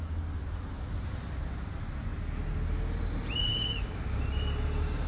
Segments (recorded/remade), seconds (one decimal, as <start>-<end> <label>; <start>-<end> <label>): 0.0-5.1 recorded

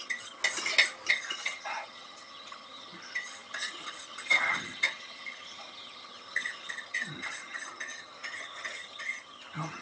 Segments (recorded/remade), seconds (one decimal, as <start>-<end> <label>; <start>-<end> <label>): 0.0-0.4 remade; 0.4-1.1 recorded; 1.1-9.8 remade

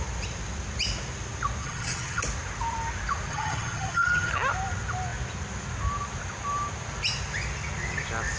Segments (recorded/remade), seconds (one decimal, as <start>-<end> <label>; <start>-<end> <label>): 0.0-1.6 recorded; 1.6-2.2 remade; 2.2-3.3 recorded; 3.3-4.3 remade; 4.3-8.4 recorded

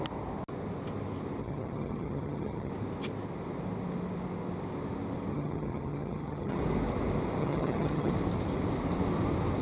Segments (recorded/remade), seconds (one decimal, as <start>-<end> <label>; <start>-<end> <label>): 0.0-1.4 recorded; 1.4-2.7 remade; 2.7-5.3 recorded; 5.3-6.6 remade; 6.6-7.4 recorded; 7.4-8.1 remade; 8.1-9.6 recorded

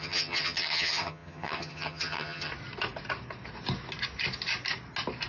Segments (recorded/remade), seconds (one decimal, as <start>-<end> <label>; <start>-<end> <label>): 0.0-2.5 remade; 2.5-5.3 recorded